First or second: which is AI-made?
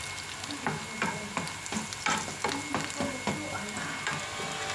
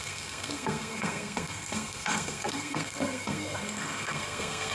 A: second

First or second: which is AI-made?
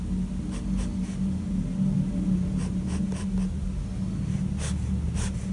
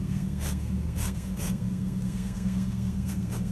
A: second